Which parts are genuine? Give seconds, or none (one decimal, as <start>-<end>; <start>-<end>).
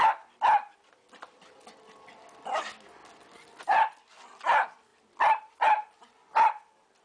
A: 0.0-7.0